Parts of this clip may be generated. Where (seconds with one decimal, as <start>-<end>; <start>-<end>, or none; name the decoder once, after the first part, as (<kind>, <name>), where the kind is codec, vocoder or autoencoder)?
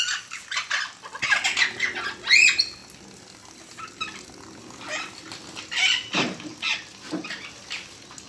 none